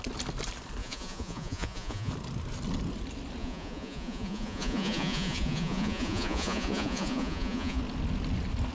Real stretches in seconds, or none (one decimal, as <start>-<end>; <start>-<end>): 0.0-0.8; 2.1-3.4; 7.8-8.7